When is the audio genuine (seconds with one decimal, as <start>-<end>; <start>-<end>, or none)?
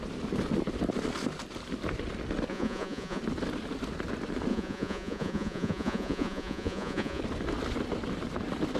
0.0-2.5; 3.2-4.5; 7.2-8.8